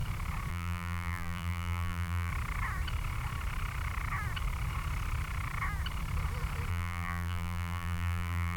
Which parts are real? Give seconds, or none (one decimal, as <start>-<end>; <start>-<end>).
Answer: 0.0-0.5; 2.3-6.7